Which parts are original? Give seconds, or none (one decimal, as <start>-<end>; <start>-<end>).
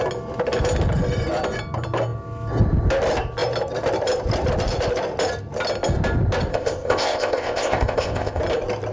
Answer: 0.0-6.5; 8.4-8.9